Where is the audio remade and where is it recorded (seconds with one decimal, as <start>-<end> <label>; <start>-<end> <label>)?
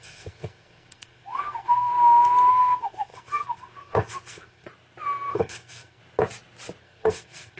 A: 0.0-1.9 remade; 1.9-2.5 recorded; 2.5-4.7 remade; 4.7-5.3 recorded; 5.3-6.0 remade; 6.0-6.8 recorded; 6.8-7.6 remade